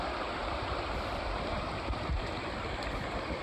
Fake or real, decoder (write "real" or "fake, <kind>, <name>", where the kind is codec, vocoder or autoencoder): real